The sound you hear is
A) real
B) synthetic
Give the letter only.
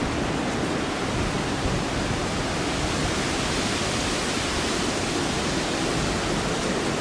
A